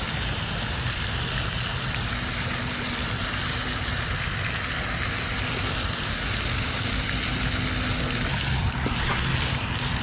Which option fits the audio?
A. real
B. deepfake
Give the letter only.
A